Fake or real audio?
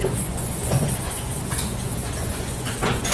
fake